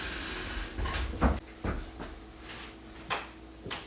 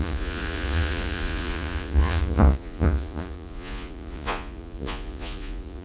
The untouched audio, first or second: first